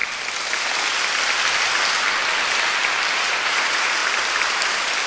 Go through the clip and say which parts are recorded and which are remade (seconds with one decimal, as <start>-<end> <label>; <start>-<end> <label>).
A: 0.0-3.1 recorded; 3.1-4.0 remade; 4.0-5.1 recorded